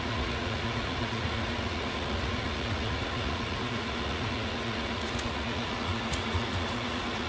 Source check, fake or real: fake